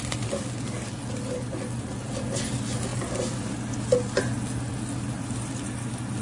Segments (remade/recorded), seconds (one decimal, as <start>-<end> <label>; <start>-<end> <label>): 0.0-6.2 recorded